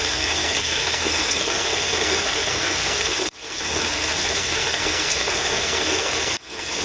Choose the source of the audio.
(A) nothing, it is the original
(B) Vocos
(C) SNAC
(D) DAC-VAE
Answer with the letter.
C